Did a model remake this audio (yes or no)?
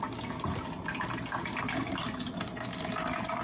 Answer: no